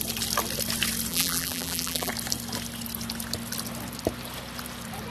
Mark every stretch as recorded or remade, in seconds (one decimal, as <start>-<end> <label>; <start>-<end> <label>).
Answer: 0.0-1.1 recorded; 1.1-2.1 remade; 2.1-5.1 recorded

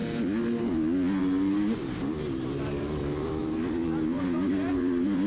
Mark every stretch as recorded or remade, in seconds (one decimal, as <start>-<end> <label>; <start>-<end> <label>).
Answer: 0.0-1.2 recorded; 1.2-5.3 remade

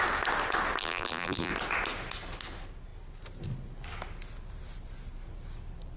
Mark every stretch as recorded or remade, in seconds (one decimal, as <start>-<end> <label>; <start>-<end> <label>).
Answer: 0.0-0.8 recorded; 0.8-1.5 remade; 1.5-6.0 recorded

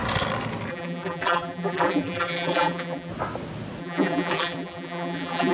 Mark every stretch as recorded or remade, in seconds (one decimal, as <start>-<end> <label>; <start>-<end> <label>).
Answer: 0.0-0.7 recorded; 0.7-3.1 remade; 3.1-3.8 recorded; 3.8-5.5 remade

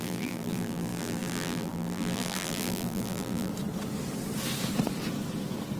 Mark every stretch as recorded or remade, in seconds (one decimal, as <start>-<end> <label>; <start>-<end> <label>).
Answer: 0.0-3.5 remade; 3.5-5.8 recorded